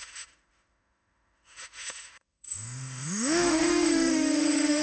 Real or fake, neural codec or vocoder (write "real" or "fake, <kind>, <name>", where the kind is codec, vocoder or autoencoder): fake, autoencoder, DAC-VAE